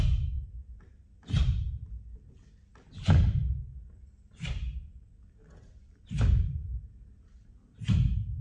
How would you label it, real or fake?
real